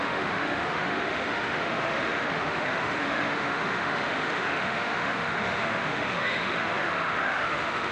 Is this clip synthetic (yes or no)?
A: yes